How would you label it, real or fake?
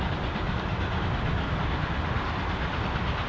real